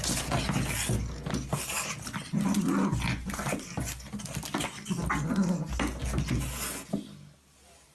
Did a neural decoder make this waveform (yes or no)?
no